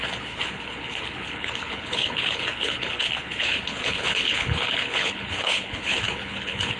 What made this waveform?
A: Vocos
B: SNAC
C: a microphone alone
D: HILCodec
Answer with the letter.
D